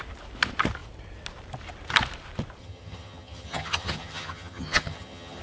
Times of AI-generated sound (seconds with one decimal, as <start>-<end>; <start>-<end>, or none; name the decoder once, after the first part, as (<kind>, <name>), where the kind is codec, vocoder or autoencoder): 2.6-5.4 (vocoder, HiFi-GAN)